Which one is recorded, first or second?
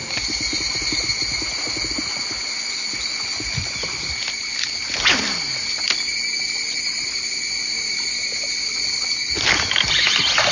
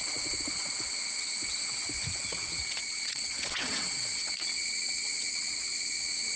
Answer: first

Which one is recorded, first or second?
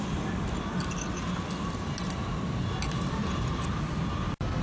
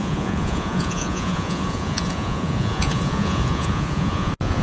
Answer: first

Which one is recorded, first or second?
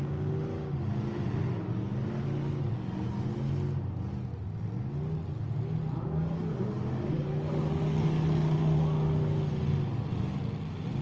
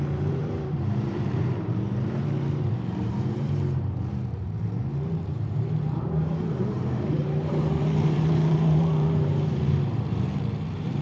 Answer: first